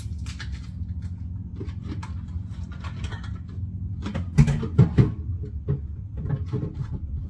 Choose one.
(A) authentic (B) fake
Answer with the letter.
A